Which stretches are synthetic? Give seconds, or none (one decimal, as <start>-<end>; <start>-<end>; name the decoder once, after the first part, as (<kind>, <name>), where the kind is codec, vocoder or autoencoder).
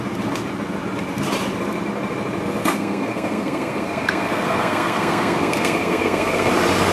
2.6-6.5 (codec, SNAC)